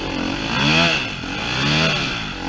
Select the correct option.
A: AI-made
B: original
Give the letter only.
B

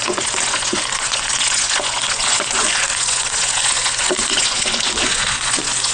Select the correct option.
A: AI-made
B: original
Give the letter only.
A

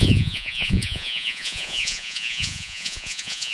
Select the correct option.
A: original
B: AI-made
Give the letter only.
B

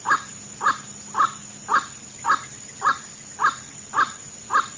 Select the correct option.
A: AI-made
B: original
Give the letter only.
B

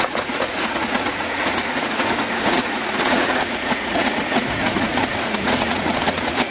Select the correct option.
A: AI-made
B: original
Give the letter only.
A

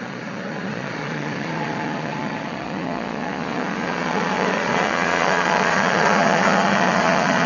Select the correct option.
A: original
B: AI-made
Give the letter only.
B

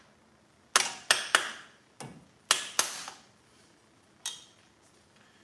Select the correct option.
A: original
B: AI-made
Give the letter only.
A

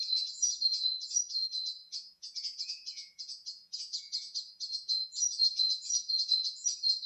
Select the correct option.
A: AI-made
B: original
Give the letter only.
A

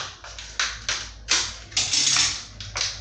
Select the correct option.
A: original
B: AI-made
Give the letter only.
A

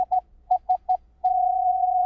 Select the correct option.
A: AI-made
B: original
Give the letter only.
A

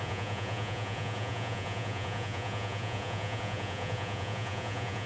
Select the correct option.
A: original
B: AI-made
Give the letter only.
B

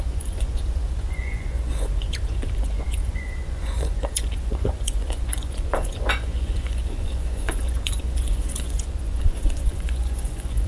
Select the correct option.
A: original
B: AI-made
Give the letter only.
B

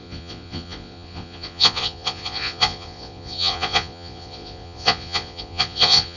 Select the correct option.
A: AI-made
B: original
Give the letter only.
A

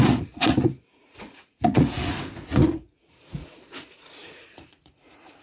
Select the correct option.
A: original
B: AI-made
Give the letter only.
B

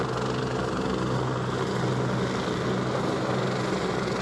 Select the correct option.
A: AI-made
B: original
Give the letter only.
B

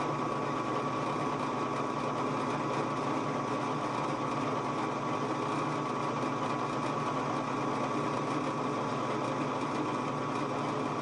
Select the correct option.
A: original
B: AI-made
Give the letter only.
A